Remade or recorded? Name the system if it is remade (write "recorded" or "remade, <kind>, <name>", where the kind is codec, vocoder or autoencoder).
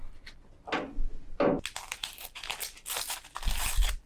recorded